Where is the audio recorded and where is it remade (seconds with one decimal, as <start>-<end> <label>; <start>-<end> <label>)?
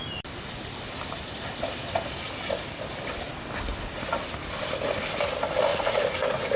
0.0-5.7 recorded; 5.7-6.6 remade